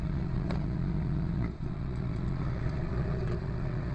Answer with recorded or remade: remade